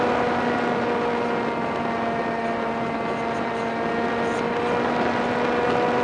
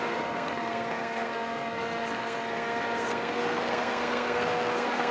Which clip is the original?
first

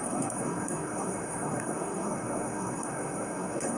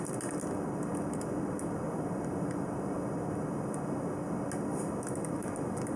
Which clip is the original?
second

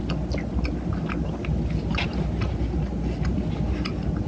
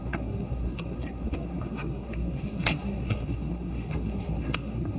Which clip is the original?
first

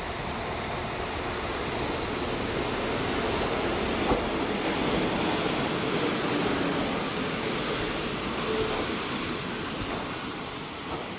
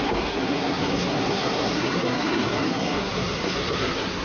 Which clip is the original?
first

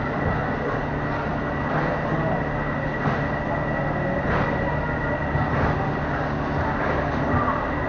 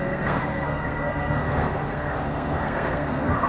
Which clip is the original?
first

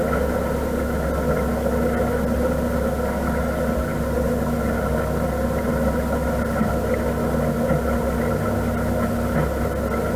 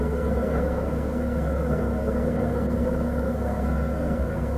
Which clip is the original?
first